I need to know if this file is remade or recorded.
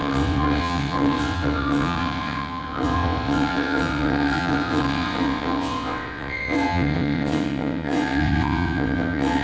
remade